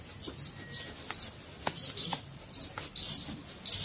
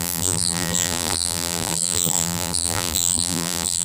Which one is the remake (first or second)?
second